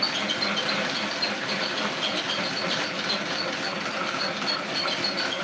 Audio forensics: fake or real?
real